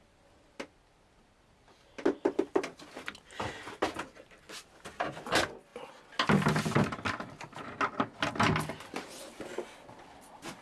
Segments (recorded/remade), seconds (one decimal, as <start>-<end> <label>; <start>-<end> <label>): 0.0-10.6 recorded